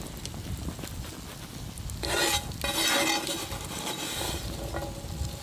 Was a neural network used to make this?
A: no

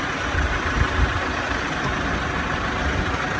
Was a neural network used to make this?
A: no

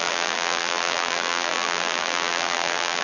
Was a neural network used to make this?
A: yes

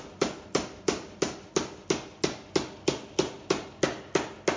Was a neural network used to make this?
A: no